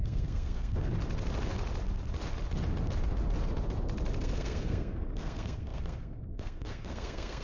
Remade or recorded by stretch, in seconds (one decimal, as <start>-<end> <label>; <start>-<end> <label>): 0.0-0.9 remade; 0.9-4.2 recorded; 4.2-7.4 remade